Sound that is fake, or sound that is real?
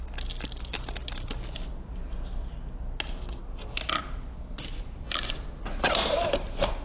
real